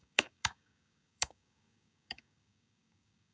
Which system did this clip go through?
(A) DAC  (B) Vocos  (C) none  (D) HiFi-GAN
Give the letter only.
A